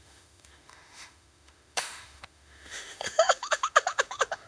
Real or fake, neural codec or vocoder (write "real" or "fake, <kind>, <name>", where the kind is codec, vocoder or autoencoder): fake, autoencoder, DAC-VAE